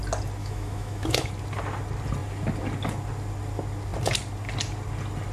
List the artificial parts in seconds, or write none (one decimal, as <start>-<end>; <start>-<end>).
0.4-1.3